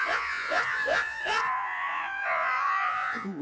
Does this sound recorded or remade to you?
remade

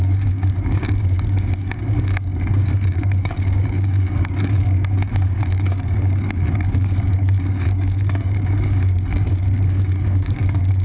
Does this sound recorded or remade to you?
remade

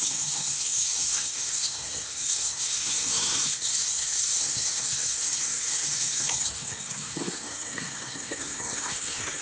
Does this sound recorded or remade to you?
remade